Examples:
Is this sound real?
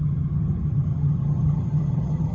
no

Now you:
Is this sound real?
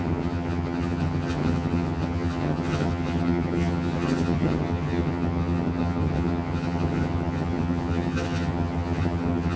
no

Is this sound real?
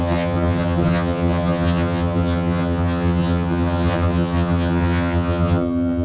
no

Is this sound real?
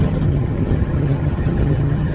no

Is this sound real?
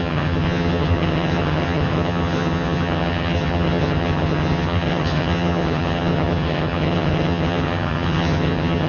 no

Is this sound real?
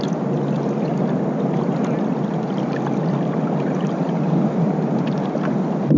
yes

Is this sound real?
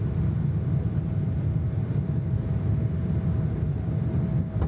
yes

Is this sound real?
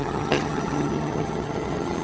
no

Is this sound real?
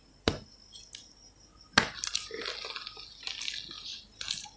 yes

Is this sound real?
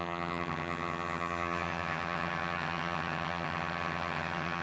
no